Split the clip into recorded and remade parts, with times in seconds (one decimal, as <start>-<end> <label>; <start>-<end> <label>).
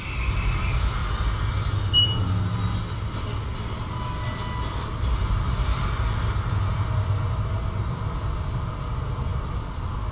0.0-10.1 recorded